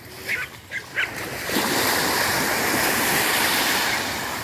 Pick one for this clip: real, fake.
fake